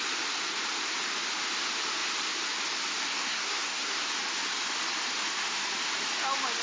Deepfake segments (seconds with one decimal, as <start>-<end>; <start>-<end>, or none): 3.1-4.1